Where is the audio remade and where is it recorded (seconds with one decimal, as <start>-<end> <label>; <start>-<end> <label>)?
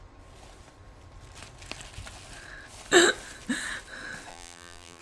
0.0-4.3 recorded; 4.3-5.0 remade